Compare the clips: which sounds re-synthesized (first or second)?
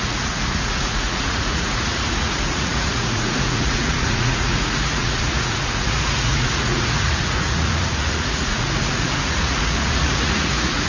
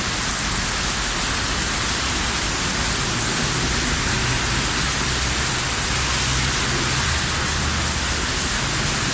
first